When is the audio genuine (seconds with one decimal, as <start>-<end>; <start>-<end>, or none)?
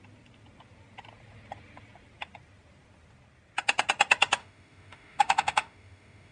0.0-4.4